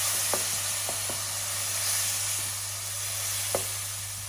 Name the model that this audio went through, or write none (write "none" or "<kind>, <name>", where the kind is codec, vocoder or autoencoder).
none